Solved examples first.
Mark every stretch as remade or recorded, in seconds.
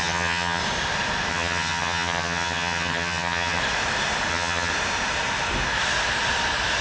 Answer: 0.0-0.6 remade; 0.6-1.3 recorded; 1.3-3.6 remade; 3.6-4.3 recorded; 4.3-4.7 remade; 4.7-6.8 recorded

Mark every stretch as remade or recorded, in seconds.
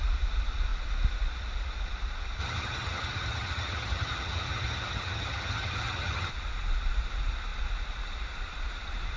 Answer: 0.0-2.4 recorded; 2.4-6.3 remade; 6.3-9.2 recorded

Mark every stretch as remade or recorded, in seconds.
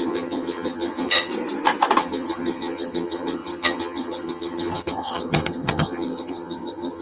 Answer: 0.0-1.3 remade; 1.3-2.0 recorded; 2.0-7.0 remade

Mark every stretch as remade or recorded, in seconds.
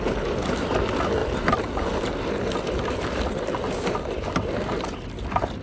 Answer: 0.0-5.6 recorded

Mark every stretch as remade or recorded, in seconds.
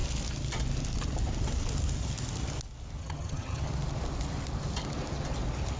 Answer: 0.0-3.0 recorded; 3.0-3.7 remade; 3.7-5.8 recorded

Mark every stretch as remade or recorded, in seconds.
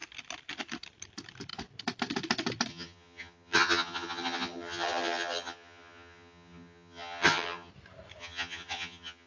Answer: 0.0-2.7 recorded; 2.7-7.7 remade; 7.7-8.2 recorded; 8.2-9.3 remade